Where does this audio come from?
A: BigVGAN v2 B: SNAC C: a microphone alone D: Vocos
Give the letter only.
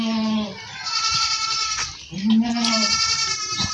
C